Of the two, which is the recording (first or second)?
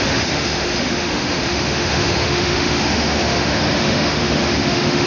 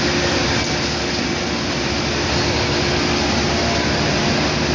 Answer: second